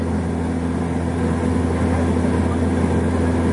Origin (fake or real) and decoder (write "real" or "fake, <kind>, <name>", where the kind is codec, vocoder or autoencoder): real